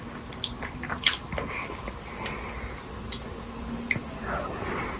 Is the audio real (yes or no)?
yes